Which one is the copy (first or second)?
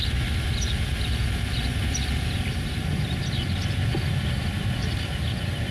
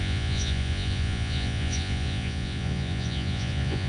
second